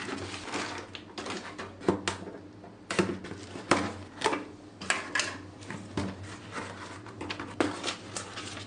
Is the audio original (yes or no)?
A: yes